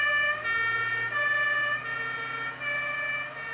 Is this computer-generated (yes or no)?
no